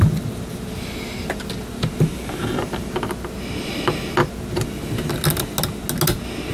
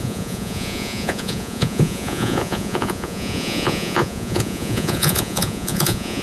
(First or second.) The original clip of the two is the first